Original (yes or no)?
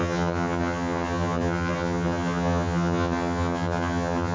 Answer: no